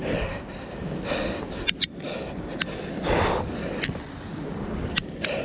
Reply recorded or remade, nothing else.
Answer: recorded